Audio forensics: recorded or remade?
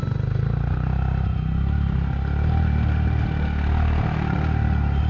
recorded